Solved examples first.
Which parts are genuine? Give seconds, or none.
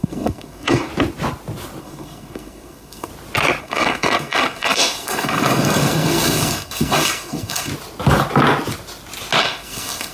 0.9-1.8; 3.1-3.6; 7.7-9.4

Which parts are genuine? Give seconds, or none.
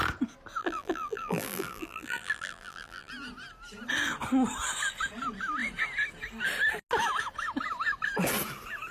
0.0-0.6; 3.1-8.9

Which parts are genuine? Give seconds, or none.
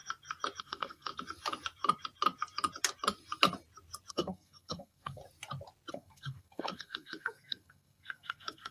0.0-0.6; 1.1-4.1; 5.2-5.9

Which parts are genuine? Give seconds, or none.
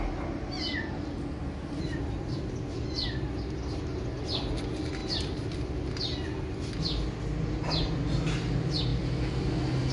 0.0-5.0; 6.0-8.9; 9.5-9.9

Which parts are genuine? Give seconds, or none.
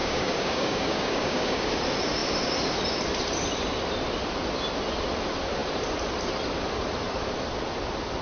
1.8-8.2